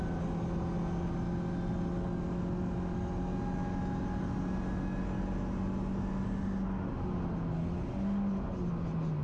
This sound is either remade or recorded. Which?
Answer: recorded